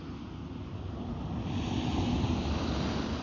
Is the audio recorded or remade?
recorded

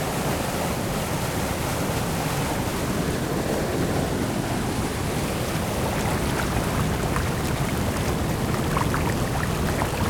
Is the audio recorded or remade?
recorded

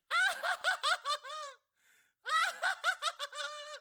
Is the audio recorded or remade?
remade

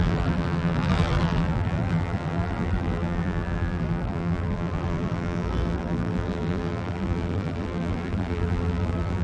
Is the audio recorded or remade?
remade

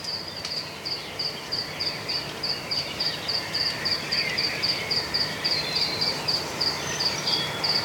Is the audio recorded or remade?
remade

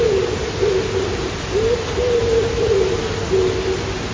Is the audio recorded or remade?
recorded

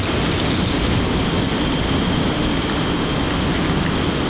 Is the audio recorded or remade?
recorded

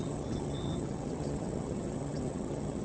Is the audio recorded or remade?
remade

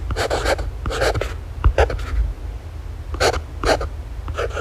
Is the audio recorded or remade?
recorded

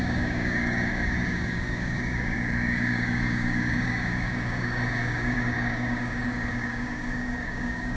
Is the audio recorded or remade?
remade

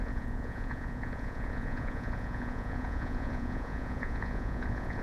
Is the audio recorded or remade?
remade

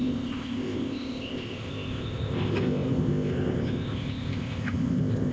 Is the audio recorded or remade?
remade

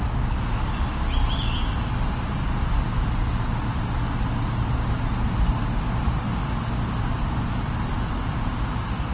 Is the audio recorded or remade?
recorded